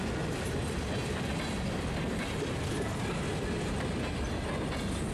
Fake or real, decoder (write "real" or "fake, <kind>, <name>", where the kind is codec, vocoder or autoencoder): real